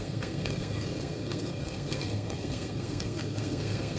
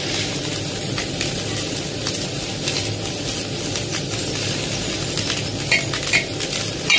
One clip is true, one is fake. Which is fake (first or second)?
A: first